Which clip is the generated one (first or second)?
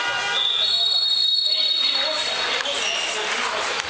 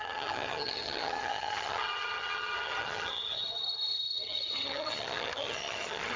second